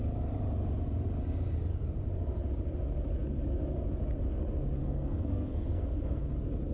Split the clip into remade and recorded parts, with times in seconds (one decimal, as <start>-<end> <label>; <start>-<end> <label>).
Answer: 0.0-4.8 recorded; 4.8-6.3 remade; 6.3-6.7 recorded